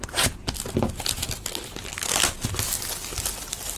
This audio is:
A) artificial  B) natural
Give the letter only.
B